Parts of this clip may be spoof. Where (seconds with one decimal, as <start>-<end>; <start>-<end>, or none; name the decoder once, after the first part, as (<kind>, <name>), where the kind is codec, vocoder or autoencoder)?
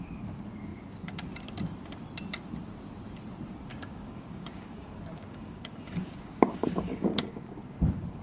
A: 3.7-7.5 (codec, DAC)